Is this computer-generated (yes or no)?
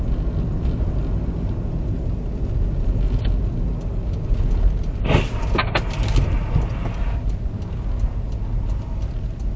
no